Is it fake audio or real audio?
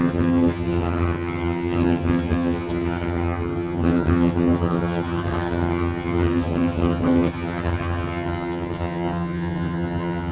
fake